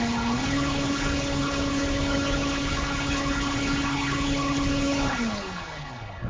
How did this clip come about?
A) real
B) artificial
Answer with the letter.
B